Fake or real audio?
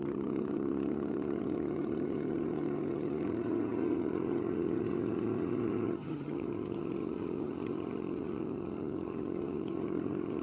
fake